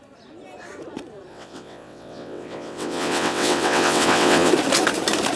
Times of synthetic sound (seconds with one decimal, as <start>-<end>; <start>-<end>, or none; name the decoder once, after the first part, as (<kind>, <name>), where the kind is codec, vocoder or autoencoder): 1.3-4.5 (vocoder, WaveNeXt)